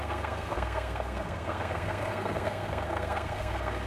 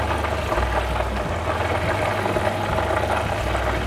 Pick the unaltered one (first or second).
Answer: second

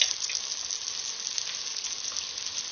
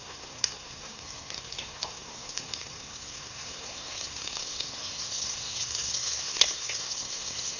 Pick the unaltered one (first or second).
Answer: first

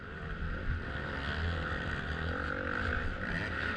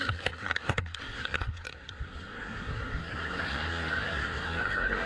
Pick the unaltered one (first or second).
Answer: first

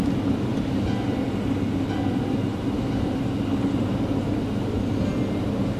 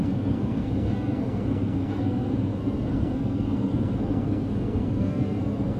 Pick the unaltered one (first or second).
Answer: first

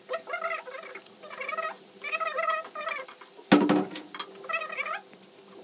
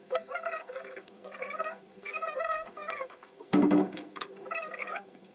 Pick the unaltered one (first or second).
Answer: first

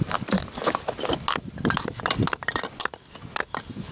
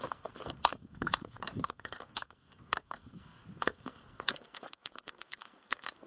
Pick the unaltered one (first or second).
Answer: first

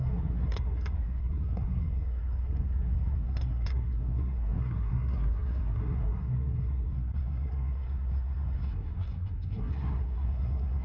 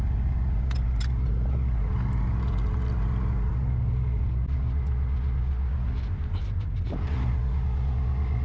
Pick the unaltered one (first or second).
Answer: second